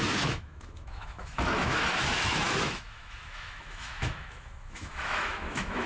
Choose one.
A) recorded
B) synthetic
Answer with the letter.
B